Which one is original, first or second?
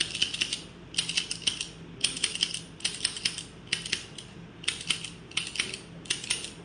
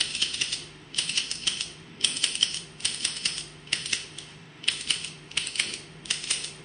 first